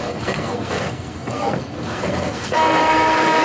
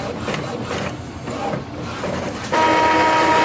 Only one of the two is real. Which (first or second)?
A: second